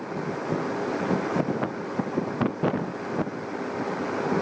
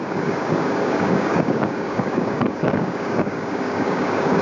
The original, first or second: first